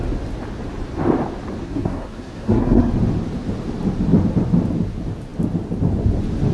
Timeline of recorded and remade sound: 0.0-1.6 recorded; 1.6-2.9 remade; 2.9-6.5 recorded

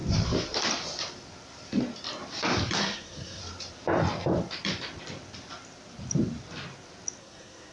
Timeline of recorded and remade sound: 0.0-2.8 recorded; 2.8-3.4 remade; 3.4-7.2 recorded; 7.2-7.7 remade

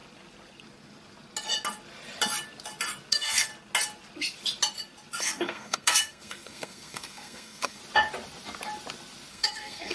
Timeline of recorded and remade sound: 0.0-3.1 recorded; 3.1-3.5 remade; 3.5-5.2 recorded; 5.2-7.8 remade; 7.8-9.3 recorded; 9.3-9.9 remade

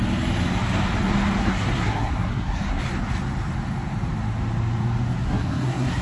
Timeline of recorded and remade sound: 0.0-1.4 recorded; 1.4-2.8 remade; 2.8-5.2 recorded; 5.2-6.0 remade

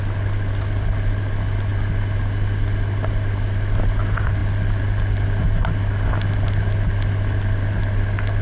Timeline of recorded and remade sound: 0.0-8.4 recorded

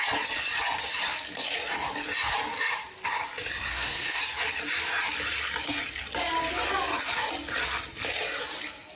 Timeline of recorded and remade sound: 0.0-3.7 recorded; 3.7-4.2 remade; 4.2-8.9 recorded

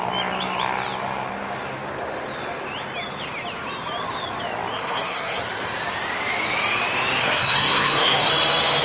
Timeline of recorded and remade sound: 0.0-4.7 recorded; 4.7-5.4 remade; 5.4-7.2 recorded; 7.2-8.3 remade; 8.3-8.8 recorded